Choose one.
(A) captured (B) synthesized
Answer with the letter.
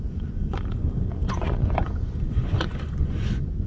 B